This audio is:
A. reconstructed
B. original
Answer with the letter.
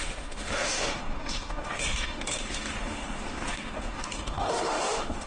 A